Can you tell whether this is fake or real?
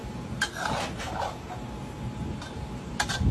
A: fake